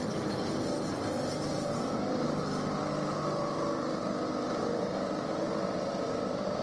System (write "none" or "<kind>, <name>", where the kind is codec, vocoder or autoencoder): none